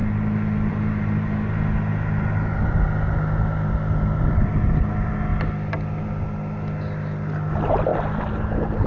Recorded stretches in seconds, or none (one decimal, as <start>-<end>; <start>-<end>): 0.0-8.9